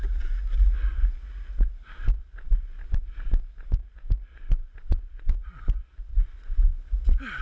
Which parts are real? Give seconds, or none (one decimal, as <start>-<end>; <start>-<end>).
0.0-2.2; 3.3-4.4; 5.4-6.1; 6.9-7.4